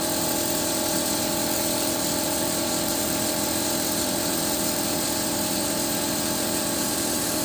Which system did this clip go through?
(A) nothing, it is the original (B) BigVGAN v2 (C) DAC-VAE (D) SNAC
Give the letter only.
B